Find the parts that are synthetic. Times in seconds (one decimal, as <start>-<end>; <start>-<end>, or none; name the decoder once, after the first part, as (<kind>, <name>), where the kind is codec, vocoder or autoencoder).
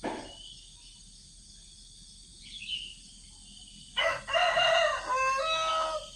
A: 2.3-3.0 (vocoder, BigVGAN v2)